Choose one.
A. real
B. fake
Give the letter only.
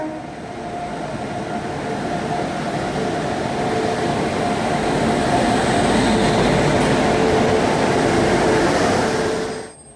A